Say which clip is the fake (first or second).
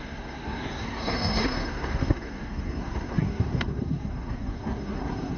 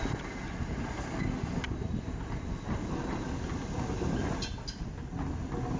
first